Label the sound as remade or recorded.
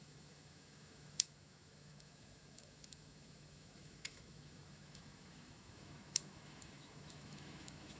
remade